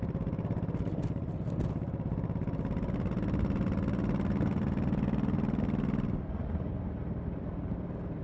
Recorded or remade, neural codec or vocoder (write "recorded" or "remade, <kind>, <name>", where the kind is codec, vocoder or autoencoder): remade, vocoder, BigVGAN v2